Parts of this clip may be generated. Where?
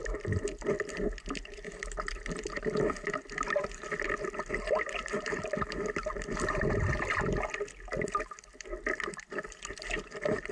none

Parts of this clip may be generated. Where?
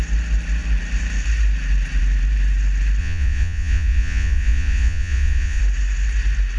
3.0-5.6 (vocoder, Vocos)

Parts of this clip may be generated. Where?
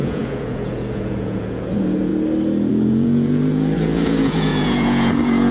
0.0-2.1 (vocoder, Vocos); 2.7-5.5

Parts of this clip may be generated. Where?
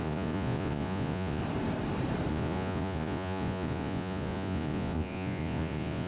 0.0-1.4 (vocoder, Vocos); 2.3-6.1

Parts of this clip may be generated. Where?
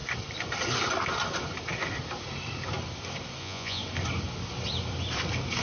3.4-3.8 (vocoder, Vocos)